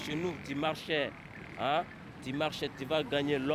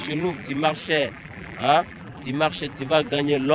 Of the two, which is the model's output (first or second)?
second